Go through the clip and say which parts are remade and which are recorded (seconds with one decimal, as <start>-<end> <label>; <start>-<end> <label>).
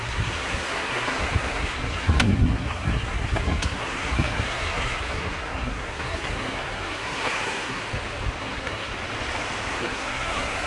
0.0-7.8 remade; 7.8-8.4 recorded; 8.4-8.9 remade; 8.9-9.7 recorded; 9.7-10.7 remade